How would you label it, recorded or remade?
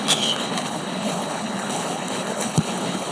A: remade